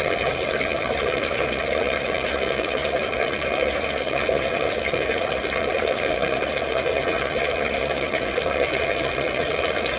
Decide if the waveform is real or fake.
fake